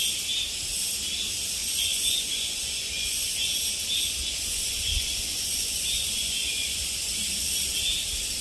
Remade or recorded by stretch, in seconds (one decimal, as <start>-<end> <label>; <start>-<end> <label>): 0.0-1.6 recorded; 1.6-3.5 remade; 3.5-4.2 recorded; 4.2-7.1 remade; 7.1-8.4 recorded